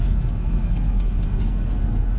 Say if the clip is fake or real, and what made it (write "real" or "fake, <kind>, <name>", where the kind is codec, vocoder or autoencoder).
fake, codec, SNAC